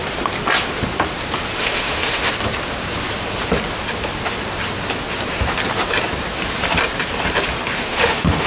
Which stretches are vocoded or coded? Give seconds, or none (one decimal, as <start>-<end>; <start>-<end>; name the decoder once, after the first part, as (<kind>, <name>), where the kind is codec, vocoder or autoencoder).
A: 1.5-2.3 (autoencoder, DAC-VAE); 7.8-8.5